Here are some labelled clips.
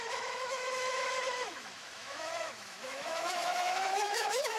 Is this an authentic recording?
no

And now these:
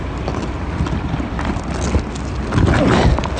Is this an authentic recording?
yes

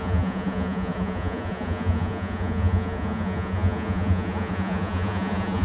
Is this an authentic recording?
no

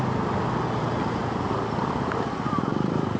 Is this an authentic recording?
yes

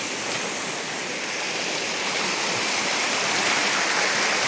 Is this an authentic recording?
yes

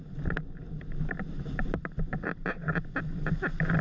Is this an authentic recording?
yes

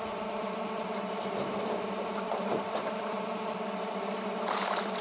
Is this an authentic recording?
yes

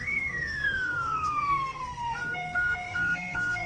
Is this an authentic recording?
no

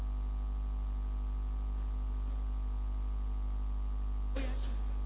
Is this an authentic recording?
yes